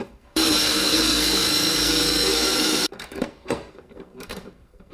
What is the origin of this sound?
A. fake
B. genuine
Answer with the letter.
A